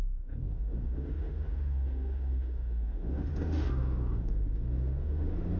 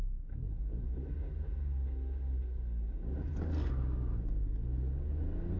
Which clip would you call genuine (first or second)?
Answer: second